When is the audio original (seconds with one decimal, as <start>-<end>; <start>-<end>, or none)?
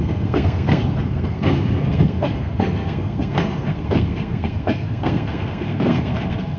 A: none